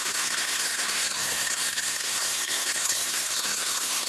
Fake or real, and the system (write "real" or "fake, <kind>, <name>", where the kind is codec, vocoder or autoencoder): fake, codec, SNAC